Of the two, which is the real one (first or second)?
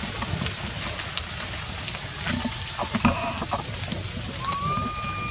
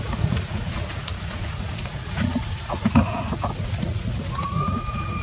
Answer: first